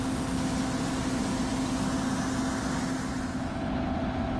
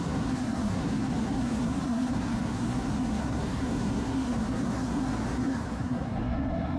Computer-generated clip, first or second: second